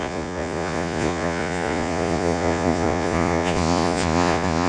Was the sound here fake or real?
fake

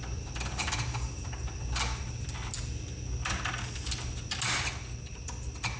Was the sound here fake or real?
real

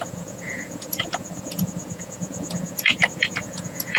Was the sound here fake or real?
fake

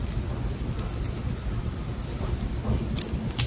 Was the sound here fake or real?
real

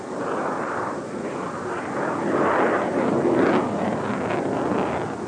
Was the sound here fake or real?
real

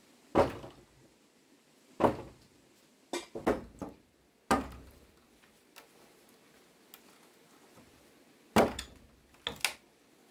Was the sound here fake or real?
real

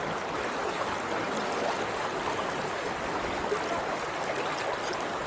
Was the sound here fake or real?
real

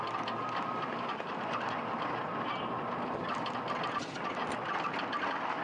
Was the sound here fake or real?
real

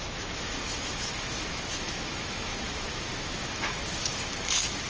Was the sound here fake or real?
fake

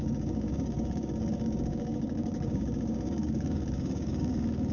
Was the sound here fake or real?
fake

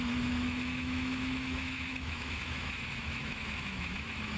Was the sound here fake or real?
fake